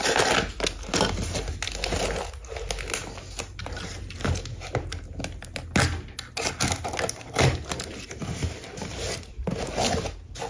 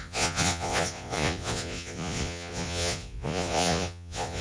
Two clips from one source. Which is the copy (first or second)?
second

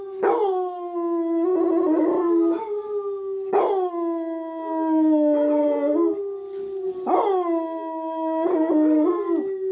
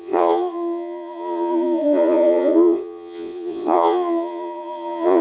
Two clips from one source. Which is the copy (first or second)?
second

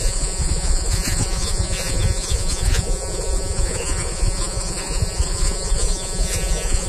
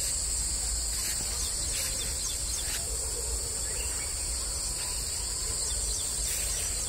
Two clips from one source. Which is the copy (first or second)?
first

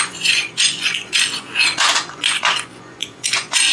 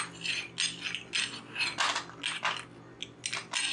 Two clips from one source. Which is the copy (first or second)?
first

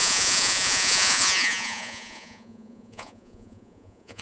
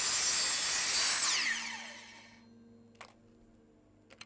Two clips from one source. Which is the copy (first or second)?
first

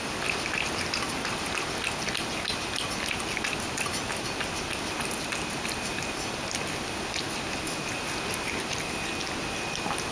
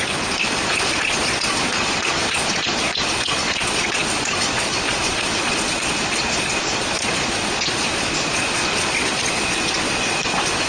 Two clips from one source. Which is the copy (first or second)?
second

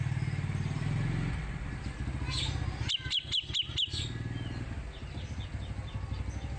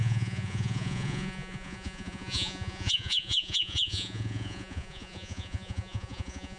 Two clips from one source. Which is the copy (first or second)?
second